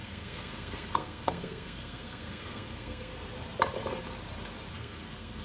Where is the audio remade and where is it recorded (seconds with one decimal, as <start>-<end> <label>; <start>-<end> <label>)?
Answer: 0.0-3.1 remade; 3.1-4.7 recorded; 4.7-5.4 remade